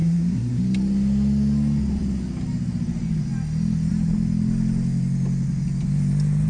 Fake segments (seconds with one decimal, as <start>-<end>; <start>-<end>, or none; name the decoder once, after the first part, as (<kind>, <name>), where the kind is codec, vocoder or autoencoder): 0.0-0.6 (codec, SNAC)